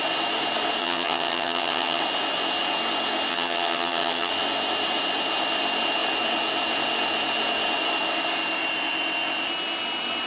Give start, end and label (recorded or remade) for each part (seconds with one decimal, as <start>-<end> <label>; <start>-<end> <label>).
0.0-0.8 recorded; 0.8-2.0 remade; 2.0-3.3 recorded; 3.3-4.3 remade; 4.3-10.3 recorded